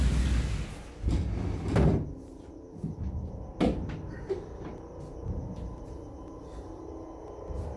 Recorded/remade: recorded